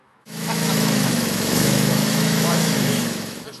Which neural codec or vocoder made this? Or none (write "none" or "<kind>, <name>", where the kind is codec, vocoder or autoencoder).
autoencoder, DAC-VAE